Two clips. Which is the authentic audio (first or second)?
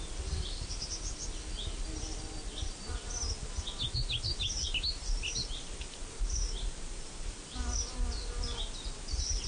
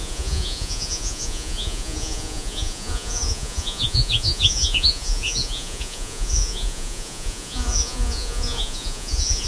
first